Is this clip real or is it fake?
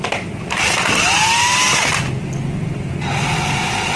real